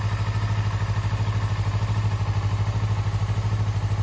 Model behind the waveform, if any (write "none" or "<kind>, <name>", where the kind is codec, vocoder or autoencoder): none